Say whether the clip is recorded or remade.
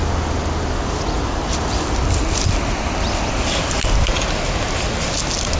recorded